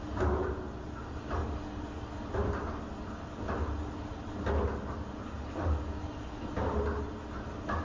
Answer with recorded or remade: recorded